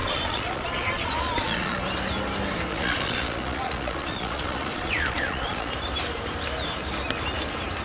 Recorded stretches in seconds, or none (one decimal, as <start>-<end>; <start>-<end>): 1.8-2.7; 5.7-7.8

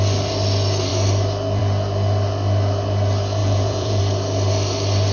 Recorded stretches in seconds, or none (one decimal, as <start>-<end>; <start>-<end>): 0.0-3.4; 4.0-5.1

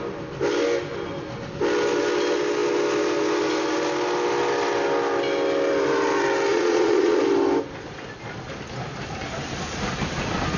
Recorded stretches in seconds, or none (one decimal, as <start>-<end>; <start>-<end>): 0.0-6.5; 7.2-10.6